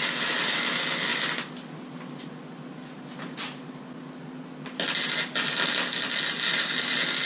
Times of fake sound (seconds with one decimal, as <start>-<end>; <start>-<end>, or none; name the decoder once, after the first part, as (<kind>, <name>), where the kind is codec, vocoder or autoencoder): none